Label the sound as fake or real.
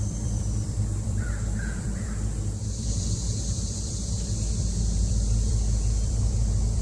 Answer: fake